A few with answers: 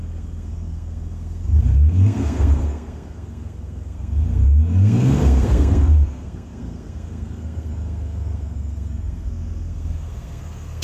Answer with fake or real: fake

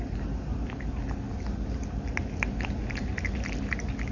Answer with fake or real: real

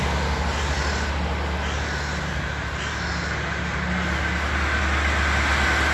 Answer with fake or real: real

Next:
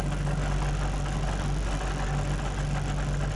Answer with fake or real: real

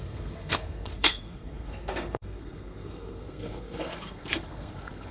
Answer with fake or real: fake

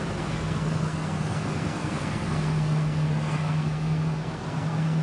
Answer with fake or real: fake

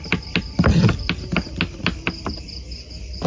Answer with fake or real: real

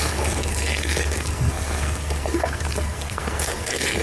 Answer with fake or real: fake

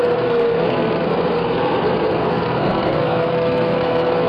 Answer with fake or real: fake